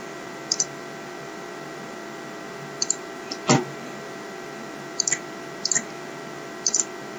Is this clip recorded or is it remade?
recorded